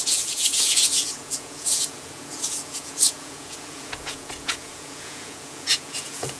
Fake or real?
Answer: fake